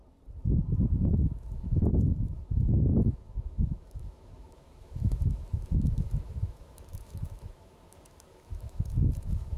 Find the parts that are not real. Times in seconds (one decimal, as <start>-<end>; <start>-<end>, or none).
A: 1.3-9.6